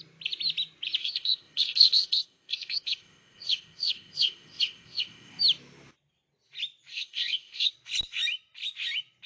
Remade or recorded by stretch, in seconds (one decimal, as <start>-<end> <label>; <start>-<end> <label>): 0.0-1.0 recorded; 1.0-5.4 remade; 5.4-6.9 recorded; 6.9-7.7 remade; 7.7-9.3 recorded